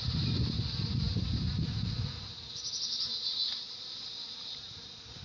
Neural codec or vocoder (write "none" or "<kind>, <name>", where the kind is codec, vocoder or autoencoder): none